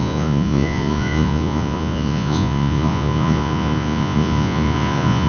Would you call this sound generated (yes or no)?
yes